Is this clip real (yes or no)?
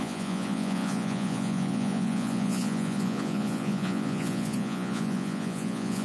no